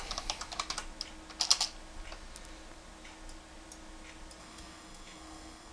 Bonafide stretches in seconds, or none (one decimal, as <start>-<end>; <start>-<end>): 0.0-4.4